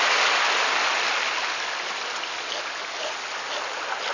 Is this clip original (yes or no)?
yes